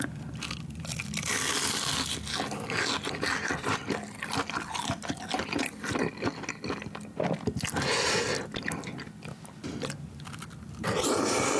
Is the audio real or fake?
real